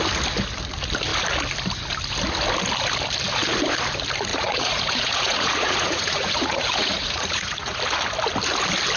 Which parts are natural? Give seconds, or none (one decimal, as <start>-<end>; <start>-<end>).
0.0-4.3; 7.8-9.0